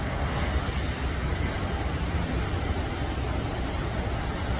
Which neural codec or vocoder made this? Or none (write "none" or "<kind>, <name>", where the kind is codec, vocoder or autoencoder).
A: none